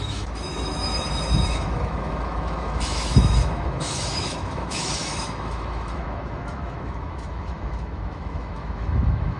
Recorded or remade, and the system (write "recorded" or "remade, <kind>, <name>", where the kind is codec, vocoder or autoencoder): remade, autoencoder, DAC-VAE